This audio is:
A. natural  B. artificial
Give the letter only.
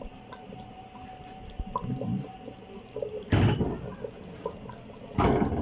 A